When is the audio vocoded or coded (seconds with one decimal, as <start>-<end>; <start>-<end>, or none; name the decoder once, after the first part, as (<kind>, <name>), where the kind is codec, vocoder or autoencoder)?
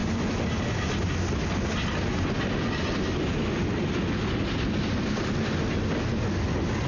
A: none